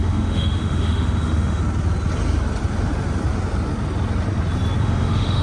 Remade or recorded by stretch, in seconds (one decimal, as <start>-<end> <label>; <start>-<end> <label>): 0.0-1.6 remade; 1.6-4.8 recorded; 4.8-5.4 remade